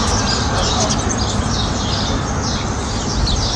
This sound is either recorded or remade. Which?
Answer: recorded